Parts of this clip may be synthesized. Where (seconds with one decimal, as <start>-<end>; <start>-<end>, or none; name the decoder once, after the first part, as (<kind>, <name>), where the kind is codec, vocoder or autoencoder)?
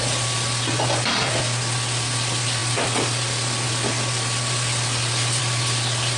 none